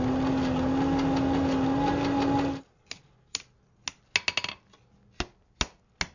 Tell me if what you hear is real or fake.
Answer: real